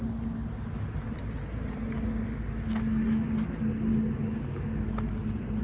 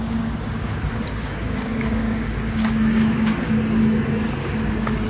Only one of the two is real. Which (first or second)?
first